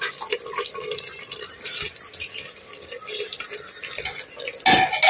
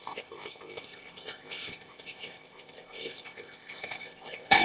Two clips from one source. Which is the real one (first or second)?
first